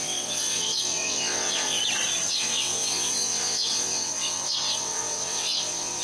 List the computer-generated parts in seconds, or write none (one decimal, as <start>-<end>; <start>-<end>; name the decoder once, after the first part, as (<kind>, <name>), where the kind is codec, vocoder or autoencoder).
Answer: 0.0-1.8 (vocoder, WaveNeXt); 2.3-6.0